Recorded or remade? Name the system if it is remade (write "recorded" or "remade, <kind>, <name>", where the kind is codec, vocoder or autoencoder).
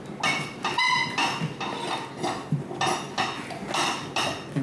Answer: recorded